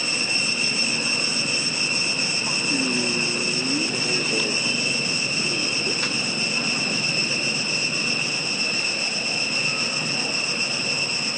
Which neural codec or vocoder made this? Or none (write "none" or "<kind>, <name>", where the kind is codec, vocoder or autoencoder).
none